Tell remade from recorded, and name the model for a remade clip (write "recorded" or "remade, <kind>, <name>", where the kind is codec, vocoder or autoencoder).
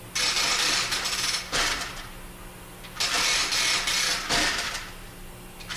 recorded